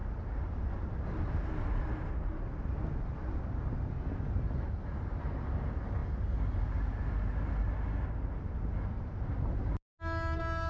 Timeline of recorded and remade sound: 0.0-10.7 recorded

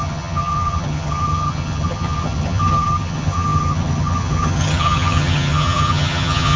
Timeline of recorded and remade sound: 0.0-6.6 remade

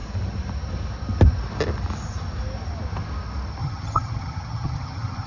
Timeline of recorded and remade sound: 0.0-3.6 recorded; 3.6-5.3 remade

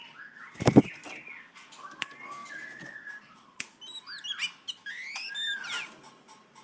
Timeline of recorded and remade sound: 0.0-6.6 recorded

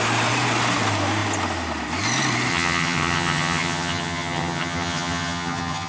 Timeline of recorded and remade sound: 0.0-2.5 recorded; 2.5-5.9 remade

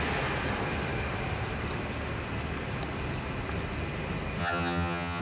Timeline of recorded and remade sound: 0.0-4.4 recorded; 4.4-5.2 remade